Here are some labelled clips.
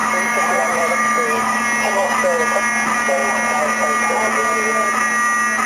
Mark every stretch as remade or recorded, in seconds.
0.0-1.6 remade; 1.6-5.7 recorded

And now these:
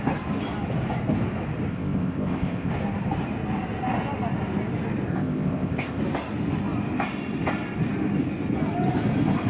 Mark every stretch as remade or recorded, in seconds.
0.0-1.7 recorded; 1.7-2.7 remade; 2.7-5.1 recorded; 5.1-6.0 remade; 6.0-9.5 recorded

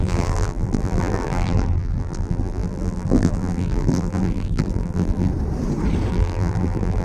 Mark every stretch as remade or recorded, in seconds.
0.0-5.3 remade; 5.3-6.1 recorded; 6.1-7.0 remade

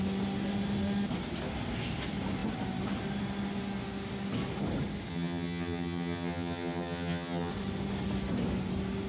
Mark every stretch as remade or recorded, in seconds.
0.0-5.1 recorded; 5.1-7.5 remade; 7.5-9.1 recorded

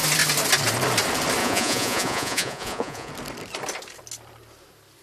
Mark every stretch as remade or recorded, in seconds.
0.0-1.4 recorded; 1.4-3.1 remade; 3.1-5.0 recorded

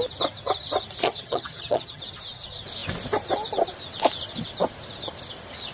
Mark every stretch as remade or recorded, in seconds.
0.0-1.0 recorded; 1.0-2.0 remade; 2.0-5.7 recorded

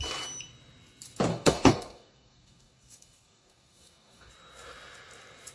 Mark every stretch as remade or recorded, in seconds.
0.0-1.3 recorded; 1.3-4.3 remade; 4.3-5.5 recorded